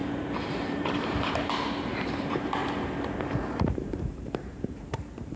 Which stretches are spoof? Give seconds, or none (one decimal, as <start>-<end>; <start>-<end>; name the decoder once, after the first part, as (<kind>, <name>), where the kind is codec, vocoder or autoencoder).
0.0-1.3 (vocoder, BigVGAN v2); 1.9-5.4